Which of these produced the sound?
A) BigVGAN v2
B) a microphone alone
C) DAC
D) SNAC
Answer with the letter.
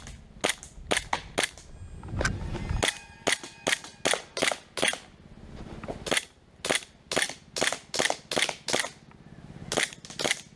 B